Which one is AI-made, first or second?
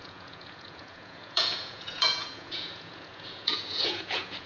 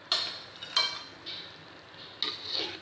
first